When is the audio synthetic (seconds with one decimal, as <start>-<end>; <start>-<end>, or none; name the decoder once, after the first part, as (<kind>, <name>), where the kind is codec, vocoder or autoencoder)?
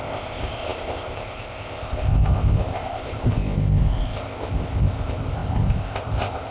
0.0-6.5 (codec, ZipCodec)